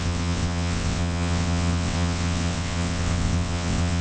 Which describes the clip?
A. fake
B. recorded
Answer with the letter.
A